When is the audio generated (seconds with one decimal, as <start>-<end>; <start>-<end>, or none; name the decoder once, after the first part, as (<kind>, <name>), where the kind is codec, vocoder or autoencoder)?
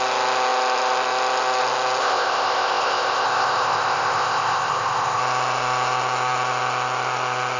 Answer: 2.0-5.2 (codec, ZipCodec)